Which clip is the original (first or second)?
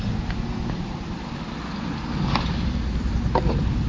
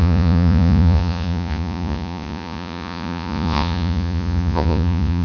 first